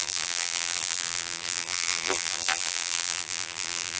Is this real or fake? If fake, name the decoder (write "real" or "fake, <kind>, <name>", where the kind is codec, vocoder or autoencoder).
fake, vocoder, BigVGAN v2